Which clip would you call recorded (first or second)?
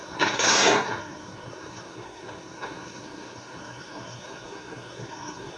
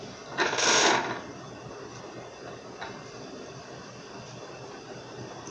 second